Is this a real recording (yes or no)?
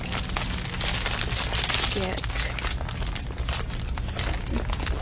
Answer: yes